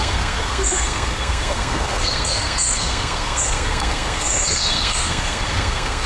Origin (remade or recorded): remade